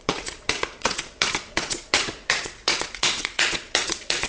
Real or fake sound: fake